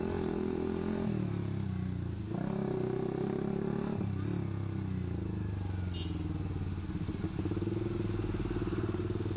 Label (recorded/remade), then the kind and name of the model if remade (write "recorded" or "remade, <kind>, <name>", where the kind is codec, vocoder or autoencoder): recorded